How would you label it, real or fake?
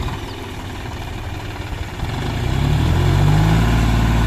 real